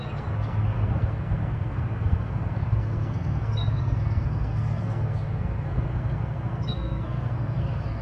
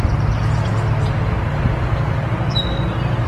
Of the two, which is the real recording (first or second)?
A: second